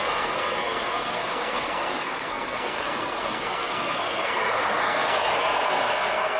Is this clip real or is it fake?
fake